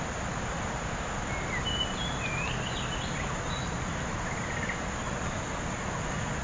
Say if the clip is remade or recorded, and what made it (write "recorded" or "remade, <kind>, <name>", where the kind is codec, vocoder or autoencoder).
recorded